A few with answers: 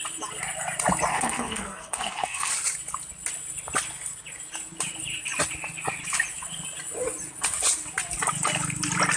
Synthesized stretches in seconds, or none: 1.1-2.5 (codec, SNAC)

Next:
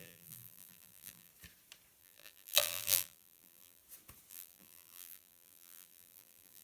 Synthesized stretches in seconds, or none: 0.0-1.3 (vocoder, BigVGAN v2); 2.0-3.8; 4.3-6.6

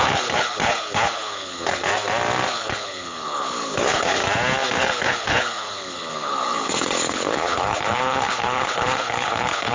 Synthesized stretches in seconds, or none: 0.0-1.9 (codec, HILCodec); 2.5-4.2; 4.8-9.7